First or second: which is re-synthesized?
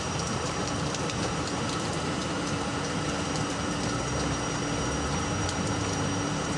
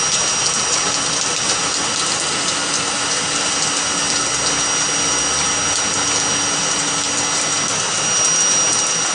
first